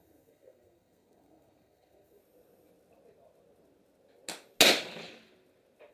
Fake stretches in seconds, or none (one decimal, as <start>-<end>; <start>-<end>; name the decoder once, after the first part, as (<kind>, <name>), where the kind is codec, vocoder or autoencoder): 0.0-2.2 (codec, SNAC)